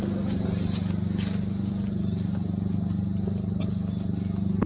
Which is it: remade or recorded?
recorded